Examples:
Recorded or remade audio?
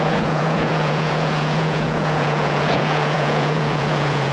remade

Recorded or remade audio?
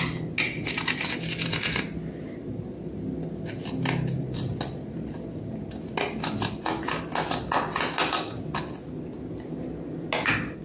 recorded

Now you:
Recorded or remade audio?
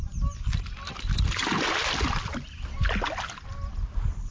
recorded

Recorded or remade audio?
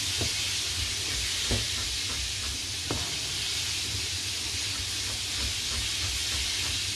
recorded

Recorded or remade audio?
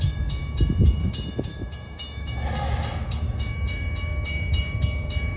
remade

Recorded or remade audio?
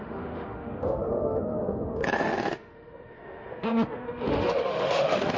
remade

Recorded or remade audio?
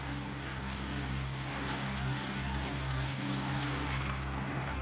remade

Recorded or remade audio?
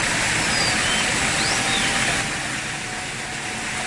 recorded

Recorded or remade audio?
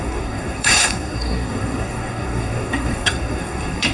remade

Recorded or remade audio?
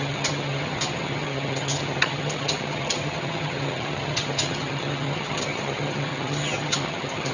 remade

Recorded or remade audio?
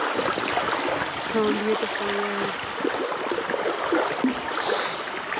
recorded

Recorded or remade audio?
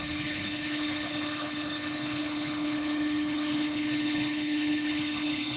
remade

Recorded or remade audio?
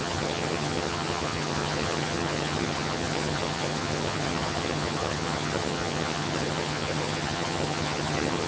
remade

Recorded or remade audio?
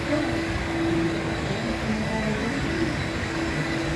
remade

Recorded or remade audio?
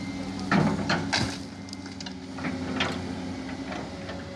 recorded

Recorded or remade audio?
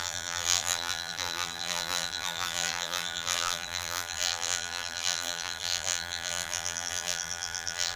remade